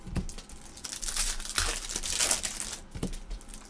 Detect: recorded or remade recorded